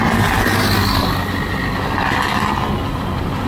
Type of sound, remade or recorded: recorded